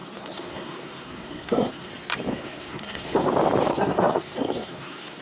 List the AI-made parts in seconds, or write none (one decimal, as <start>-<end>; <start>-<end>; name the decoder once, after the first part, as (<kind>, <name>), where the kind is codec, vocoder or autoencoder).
0.0-1.9 (codec, SNAC); 2.3-3.3; 3.7-5.2